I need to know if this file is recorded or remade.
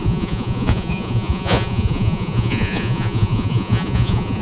remade